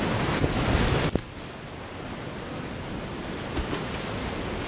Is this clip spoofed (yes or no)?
no